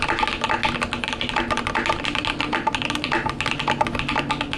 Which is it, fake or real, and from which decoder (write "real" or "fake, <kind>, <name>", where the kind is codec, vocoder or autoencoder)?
real